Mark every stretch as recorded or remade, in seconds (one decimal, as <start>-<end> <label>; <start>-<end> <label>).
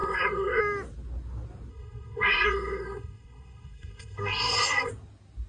0.0-0.6 remade; 0.6-1.7 recorded; 1.7-4.9 remade; 4.9-5.5 recorded